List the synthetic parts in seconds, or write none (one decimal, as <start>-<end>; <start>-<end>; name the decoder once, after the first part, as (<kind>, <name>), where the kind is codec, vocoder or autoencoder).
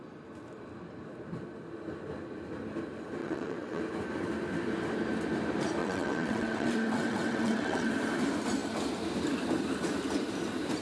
3.2-3.8 (vocoder, WaveNeXt); 5.8-7.9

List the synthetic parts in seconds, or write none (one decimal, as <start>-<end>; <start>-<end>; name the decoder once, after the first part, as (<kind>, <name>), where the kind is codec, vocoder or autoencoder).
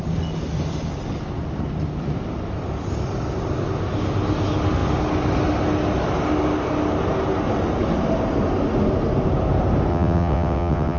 9.9-11.0 (vocoder, WaveNeXt)